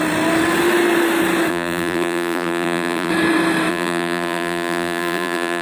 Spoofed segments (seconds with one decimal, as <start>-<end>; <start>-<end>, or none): 1.5-3.1; 3.7-5.6